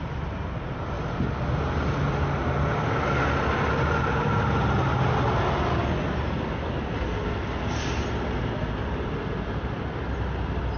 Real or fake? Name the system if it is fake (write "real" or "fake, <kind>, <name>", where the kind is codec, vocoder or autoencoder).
real